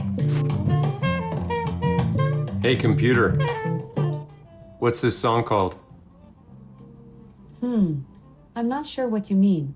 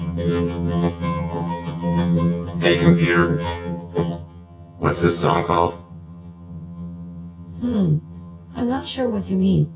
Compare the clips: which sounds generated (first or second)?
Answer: second